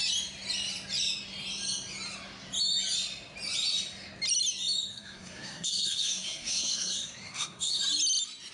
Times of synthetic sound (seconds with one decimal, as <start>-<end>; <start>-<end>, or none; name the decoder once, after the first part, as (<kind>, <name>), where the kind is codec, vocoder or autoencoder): 4.9-7.8 (codec, SNAC)

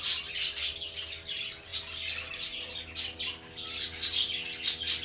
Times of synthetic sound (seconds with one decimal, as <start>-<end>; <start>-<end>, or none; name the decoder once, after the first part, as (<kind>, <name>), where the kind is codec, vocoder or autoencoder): none

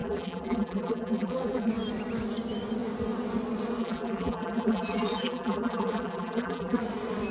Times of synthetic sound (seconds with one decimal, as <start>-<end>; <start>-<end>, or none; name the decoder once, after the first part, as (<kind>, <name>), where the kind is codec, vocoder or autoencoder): 0.0-1.7 (vocoder, BigVGAN v2); 3.8-6.8

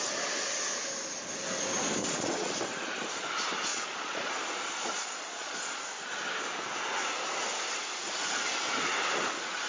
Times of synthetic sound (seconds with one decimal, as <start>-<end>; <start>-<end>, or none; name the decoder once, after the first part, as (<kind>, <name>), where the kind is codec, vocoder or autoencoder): 2.0-2.6 (vocoder, Vocos); 3.7-4.3; 4.8-5.8

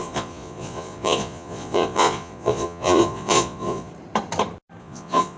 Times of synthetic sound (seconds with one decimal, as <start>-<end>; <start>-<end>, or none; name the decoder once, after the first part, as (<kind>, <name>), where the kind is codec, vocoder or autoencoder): 0.0-3.9 (vocoder, Vocos); 4.8-5.4

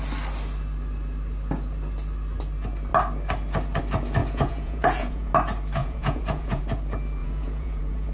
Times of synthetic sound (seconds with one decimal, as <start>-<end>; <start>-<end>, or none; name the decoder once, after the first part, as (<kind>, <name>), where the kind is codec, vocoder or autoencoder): 4.2-5.3 (vocoder, Vocos); 5.8-6.6; 7.2-8.1

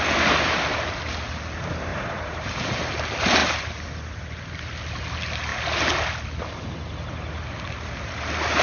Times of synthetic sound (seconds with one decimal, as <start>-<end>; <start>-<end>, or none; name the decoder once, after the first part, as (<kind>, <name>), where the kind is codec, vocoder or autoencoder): 1.9-2.7 (vocoder, BigVGAN v2)

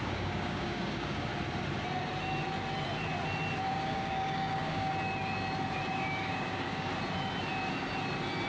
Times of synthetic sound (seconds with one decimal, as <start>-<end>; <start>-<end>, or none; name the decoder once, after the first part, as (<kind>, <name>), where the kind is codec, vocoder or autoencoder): 0.0-1.3 (codec, DAC); 3.6-4.9; 5.9-6.9